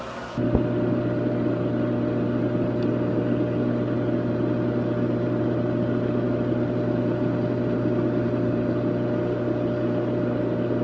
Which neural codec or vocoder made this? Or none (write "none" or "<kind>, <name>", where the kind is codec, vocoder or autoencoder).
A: none